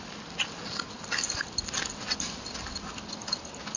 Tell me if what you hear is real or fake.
real